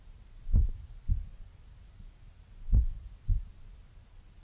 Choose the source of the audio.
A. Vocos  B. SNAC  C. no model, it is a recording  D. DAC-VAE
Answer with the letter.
C